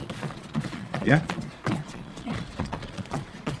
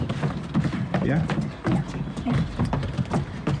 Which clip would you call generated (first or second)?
first